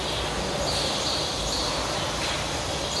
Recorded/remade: recorded